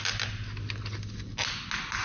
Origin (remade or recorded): recorded